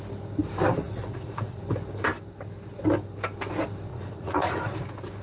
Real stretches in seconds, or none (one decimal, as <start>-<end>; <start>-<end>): 0.0-0.8; 1.6-3.9; 4.6-5.2